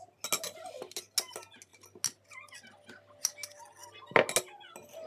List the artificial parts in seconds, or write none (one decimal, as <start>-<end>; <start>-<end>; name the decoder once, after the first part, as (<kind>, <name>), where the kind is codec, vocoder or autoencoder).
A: none